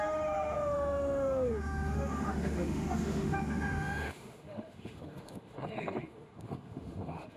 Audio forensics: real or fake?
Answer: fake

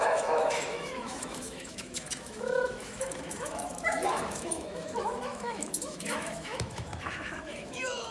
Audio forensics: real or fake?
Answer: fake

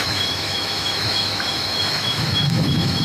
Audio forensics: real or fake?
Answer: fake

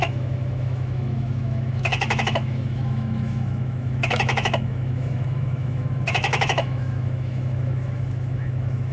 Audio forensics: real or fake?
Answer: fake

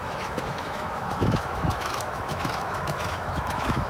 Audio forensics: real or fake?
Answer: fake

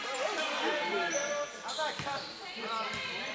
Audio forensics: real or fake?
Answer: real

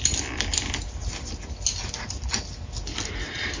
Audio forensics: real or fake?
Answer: real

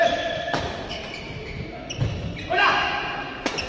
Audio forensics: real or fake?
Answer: real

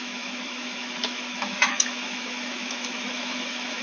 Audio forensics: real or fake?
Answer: fake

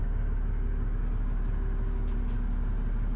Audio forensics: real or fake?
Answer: real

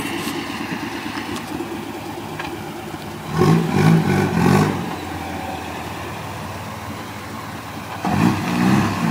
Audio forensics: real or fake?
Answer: real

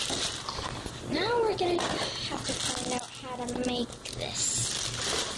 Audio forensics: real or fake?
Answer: real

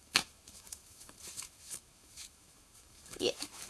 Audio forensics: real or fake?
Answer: fake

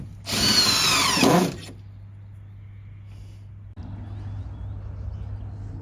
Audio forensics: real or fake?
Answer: real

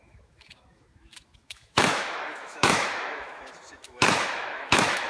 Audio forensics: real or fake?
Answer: fake